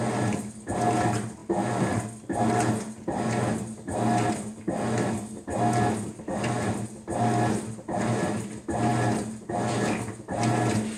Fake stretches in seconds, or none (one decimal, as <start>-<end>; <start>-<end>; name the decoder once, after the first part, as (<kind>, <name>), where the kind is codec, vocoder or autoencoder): none